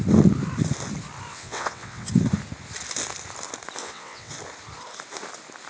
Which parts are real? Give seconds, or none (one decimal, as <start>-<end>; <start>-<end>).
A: 0.0-1.3; 2.1-3.8; 4.3-5.7